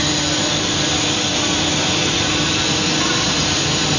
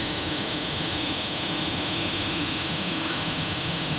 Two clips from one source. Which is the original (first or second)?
first